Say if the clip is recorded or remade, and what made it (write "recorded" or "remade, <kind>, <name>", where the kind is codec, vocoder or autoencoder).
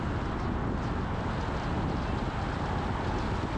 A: recorded